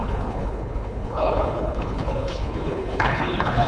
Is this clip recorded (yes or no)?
no